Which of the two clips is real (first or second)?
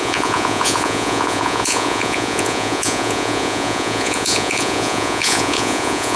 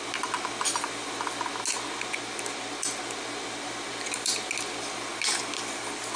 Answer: second